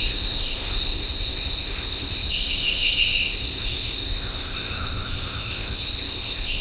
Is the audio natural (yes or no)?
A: no